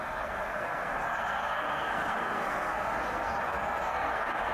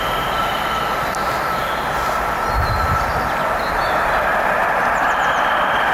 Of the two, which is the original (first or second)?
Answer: second